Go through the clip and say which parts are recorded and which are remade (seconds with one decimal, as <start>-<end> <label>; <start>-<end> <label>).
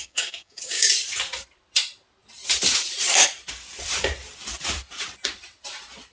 0.0-0.9 remade; 0.9-6.1 recorded